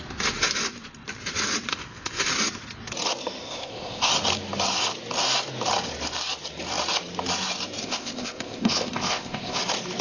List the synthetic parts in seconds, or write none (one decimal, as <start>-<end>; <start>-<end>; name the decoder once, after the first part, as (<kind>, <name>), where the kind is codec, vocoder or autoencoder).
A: 1.7-2.3 (codec, ZipCodec); 3.4-4.1; 7.8-9.6